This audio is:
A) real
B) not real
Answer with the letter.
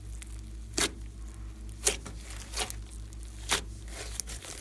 A